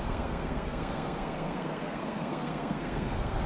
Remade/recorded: remade